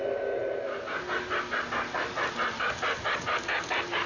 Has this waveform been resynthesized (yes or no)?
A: no